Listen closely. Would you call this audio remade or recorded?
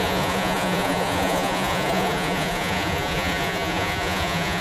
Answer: remade